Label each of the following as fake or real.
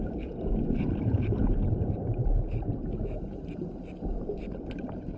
real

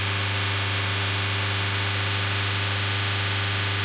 real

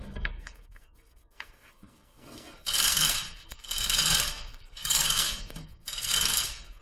fake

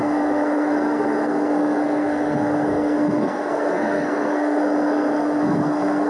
fake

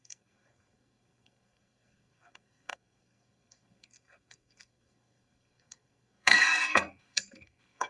fake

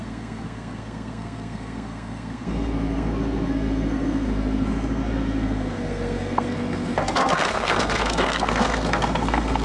fake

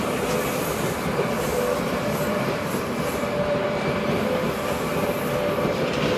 real